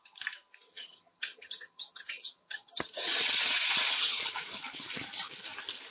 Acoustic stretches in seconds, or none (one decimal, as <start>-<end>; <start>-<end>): 0.0-0.7; 4.2-5.9